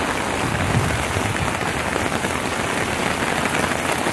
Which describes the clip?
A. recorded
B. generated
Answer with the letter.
A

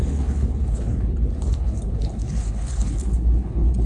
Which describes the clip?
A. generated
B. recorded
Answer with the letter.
A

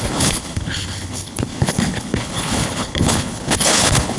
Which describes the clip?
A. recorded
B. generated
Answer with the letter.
B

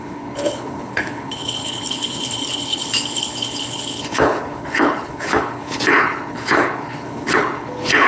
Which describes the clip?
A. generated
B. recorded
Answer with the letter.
A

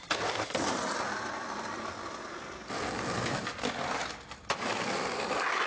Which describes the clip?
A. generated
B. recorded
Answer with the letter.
B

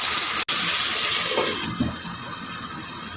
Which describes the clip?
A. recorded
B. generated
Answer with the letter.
A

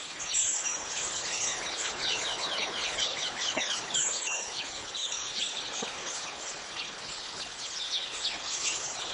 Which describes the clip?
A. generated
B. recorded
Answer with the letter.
A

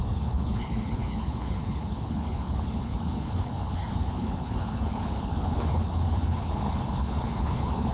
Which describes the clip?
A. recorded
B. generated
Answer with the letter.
B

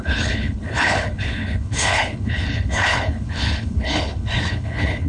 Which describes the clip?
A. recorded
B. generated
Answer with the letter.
B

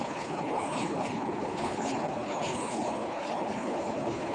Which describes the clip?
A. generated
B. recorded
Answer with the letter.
A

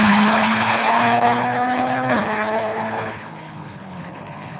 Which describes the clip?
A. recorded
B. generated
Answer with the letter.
B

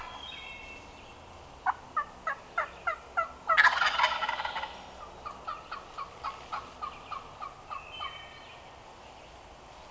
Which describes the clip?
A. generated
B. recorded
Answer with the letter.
B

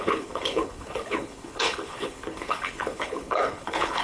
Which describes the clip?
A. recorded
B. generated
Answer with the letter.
B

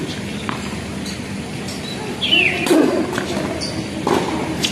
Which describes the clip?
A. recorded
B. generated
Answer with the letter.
A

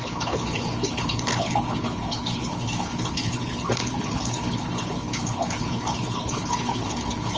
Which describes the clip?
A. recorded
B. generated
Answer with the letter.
B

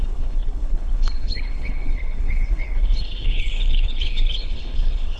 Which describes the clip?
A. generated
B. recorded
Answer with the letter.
A